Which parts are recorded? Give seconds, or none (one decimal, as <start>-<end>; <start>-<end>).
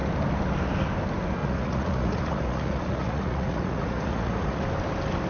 0.0-1.4; 4.6-5.3